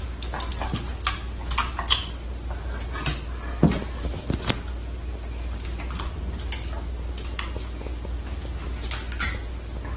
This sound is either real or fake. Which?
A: real